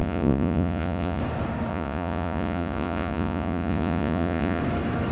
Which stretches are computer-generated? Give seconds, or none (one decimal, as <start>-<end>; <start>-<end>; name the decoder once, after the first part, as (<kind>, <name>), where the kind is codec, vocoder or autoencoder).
0.0-1.2 (vocoder, Vocos); 1.7-4.6